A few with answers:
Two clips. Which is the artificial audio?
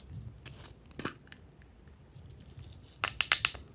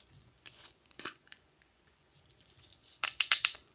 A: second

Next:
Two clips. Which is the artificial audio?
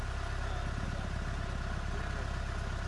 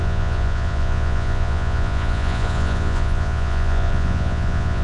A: second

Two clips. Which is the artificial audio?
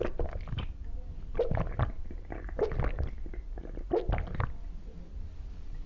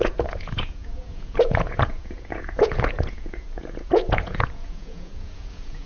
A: second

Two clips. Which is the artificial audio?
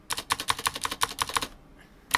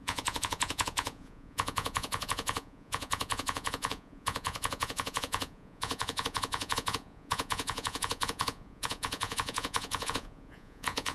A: second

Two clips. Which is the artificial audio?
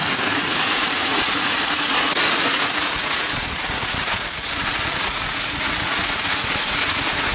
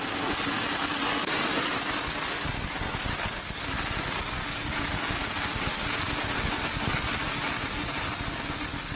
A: first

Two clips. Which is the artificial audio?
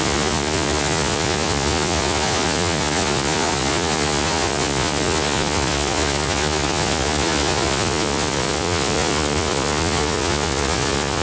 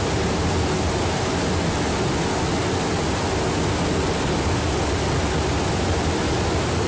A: first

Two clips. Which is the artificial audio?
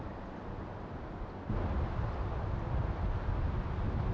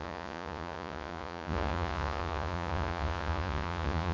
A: second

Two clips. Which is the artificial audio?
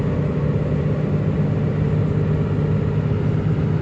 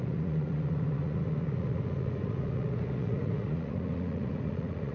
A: second